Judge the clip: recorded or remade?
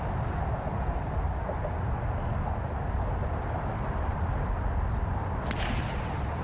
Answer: recorded